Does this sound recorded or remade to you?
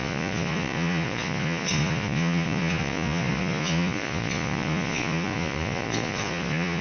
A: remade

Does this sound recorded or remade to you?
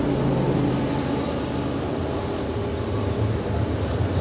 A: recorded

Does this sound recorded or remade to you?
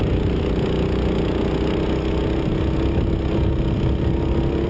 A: recorded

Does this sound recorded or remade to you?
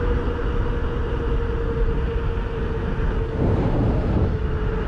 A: recorded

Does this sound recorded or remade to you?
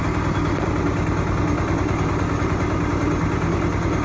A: recorded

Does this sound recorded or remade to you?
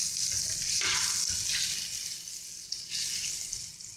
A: recorded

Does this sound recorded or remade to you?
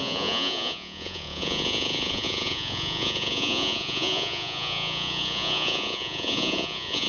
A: remade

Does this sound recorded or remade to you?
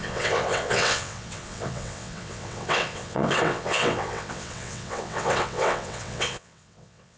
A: remade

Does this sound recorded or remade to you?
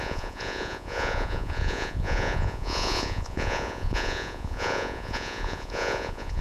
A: remade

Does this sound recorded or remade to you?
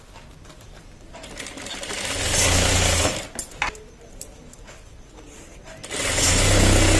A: recorded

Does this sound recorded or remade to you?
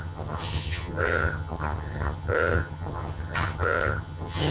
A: remade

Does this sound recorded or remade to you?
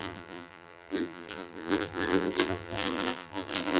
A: remade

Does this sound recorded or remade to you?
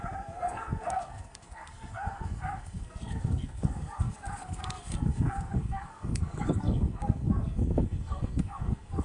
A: remade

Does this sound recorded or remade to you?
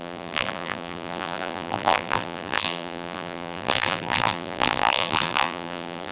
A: remade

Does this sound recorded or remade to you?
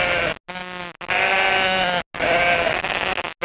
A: recorded